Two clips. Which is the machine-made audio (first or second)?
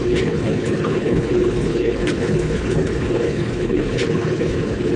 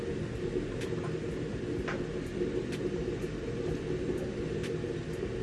first